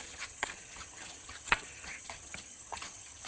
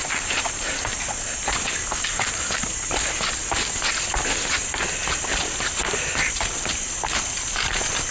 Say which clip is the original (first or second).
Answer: second